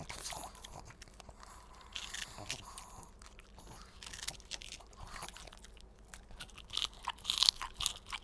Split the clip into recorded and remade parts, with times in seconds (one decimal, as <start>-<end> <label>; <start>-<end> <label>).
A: 0.0-8.2 recorded